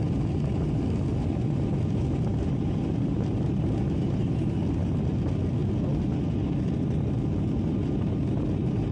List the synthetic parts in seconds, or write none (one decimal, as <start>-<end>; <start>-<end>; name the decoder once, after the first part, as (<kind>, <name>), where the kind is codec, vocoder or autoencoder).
2.3-4.5 (vocoder, BigVGAN v2)